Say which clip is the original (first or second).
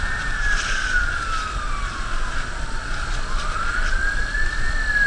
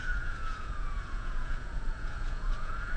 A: first